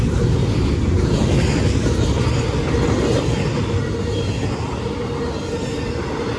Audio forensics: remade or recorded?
recorded